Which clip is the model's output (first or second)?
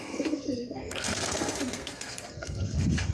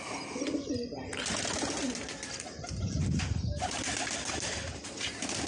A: first